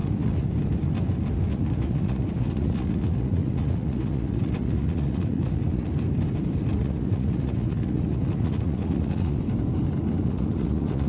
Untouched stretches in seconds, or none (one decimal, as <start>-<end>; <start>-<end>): 0.5-1.5; 5.9-6.8; 9.4-10.2